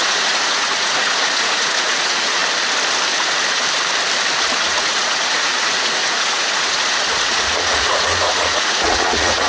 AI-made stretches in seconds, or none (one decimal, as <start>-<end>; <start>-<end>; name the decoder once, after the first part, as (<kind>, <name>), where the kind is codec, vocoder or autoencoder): 0.0-2.4 (vocoder, Vocos); 4.6-9.5